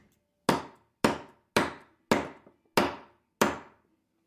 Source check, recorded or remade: recorded